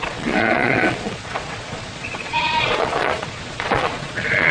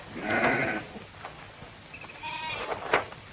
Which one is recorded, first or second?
second